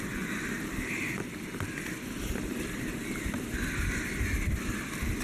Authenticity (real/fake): real